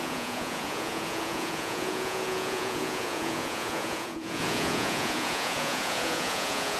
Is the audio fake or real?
fake